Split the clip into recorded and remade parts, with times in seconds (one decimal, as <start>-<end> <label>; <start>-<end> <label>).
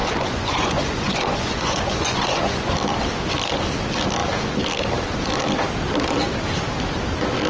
0.0-2.7 remade; 2.7-7.5 recorded